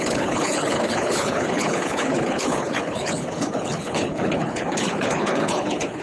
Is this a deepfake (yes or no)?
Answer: yes